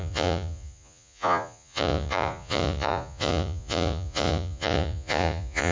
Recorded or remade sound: remade